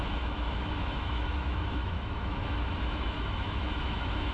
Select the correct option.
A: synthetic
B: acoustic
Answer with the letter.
A